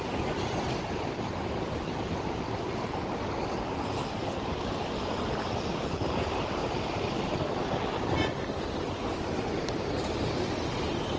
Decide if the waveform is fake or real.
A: real